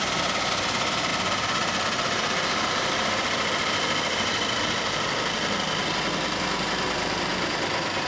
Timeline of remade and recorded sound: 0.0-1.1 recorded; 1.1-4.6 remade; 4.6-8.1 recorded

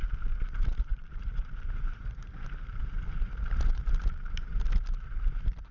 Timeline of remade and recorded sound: 0.0-0.9 recorded; 0.9-2.8 remade; 2.8-3.7 recorded; 3.7-4.5 remade; 4.5-5.7 recorded

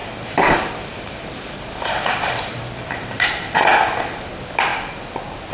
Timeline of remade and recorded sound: 0.0-3.3 remade; 3.3-5.5 recorded

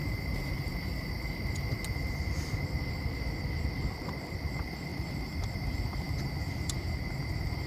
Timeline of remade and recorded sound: 0.0-1.1 remade; 1.1-4.9 recorded; 4.9-7.3 remade; 7.3-7.7 recorded

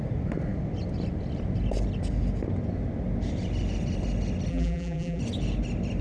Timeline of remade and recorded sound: 0.0-4.5 recorded; 4.5-5.2 remade; 5.2-6.0 recorded

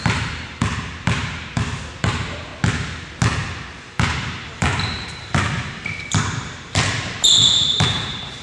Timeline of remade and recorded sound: 0.0-2.5 remade; 2.5-3.8 recorded; 3.8-8.4 remade

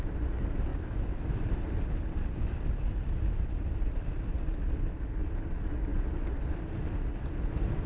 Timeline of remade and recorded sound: 0.0-5.9 recorded; 5.9-6.9 remade; 6.9-7.9 recorded